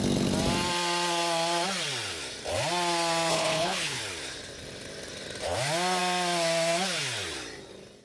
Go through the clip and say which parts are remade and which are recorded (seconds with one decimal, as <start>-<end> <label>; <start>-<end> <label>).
0.0-3.3 recorded; 3.3-4.0 remade; 4.0-8.0 recorded